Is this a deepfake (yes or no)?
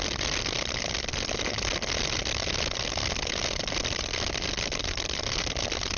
no